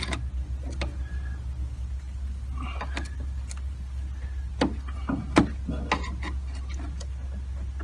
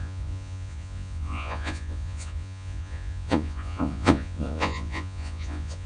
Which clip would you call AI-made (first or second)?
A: second